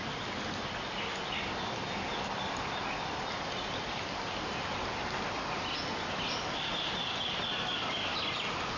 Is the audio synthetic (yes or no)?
no